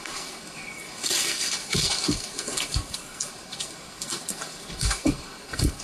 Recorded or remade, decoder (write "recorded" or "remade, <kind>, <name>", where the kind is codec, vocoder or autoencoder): remade, codec, SNAC